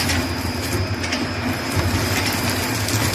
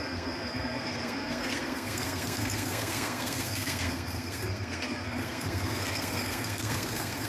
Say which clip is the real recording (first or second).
first